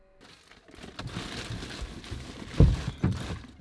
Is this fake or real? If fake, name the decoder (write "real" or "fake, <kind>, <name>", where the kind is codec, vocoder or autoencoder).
real